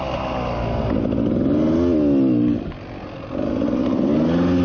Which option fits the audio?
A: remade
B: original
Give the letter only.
B